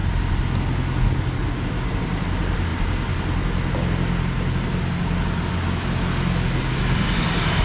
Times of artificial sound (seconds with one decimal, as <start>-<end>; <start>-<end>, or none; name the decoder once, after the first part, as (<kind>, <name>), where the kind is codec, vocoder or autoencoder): none